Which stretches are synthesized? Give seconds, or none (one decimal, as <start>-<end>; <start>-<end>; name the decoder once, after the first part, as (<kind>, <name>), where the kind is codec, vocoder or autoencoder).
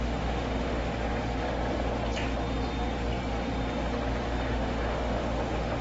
0.0-1.0 (autoencoder, DAC-VAE); 4.5-5.8